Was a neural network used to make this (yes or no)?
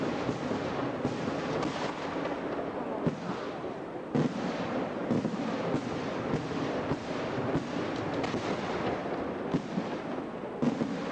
no